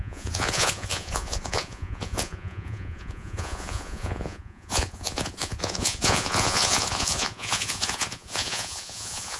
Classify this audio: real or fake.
fake